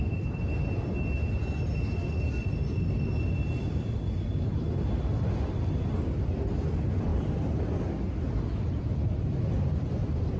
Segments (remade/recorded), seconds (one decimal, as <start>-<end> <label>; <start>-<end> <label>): 0.0-10.4 recorded